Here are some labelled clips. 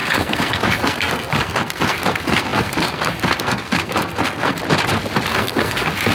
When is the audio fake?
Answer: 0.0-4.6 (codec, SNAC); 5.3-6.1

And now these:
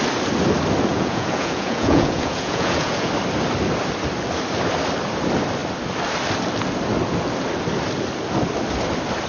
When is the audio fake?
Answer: 0.9-3.1 (vocoder, Vocos)

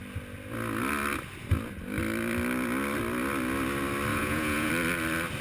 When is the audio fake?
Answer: 4.1-4.7 (vocoder, Vocos)